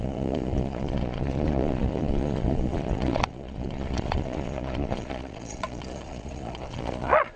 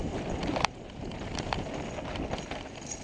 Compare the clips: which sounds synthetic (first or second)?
first